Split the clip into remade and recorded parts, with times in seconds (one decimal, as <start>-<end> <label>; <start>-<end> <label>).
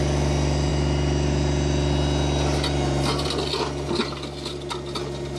0.0-5.4 recorded